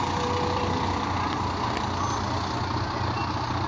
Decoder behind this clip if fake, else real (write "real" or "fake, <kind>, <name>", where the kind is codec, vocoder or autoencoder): real